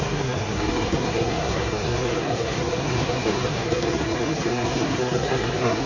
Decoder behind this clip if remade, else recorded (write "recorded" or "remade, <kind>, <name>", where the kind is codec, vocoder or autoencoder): remade, codec, SNAC